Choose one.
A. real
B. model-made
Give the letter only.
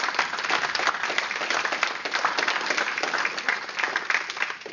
A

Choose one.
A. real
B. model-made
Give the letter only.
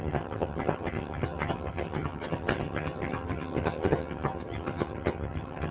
B